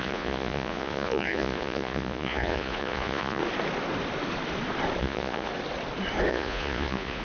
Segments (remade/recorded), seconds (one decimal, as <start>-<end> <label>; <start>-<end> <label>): 0.0-3.4 remade; 3.4-5.0 recorded; 5.0-5.5 remade; 5.5-6.3 recorded; 6.3-7.2 remade